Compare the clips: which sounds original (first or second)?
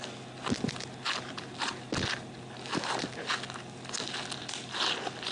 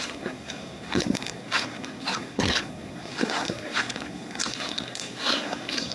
first